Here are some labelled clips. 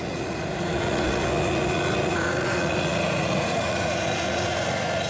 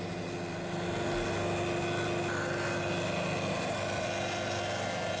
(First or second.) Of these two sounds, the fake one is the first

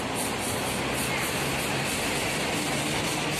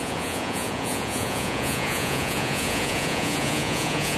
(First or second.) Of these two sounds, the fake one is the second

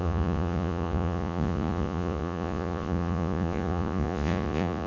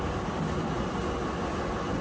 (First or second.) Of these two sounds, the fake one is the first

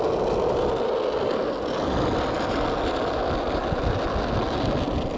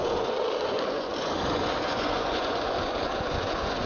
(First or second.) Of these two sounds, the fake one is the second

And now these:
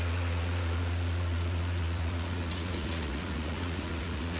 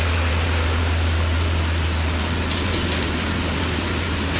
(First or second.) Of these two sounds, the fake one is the first